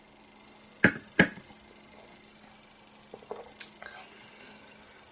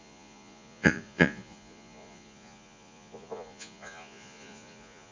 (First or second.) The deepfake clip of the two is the second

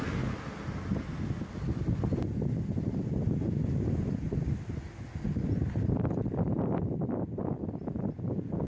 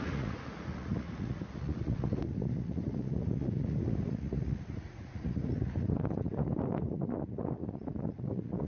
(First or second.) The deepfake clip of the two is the second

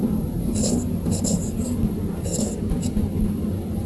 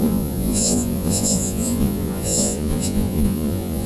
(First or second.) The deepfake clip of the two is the second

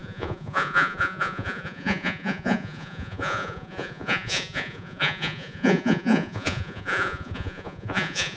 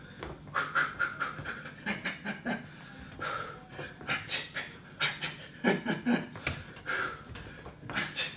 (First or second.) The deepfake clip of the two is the first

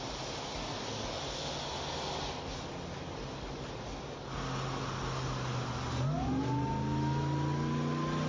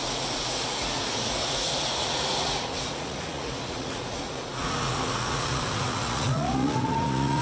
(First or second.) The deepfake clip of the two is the second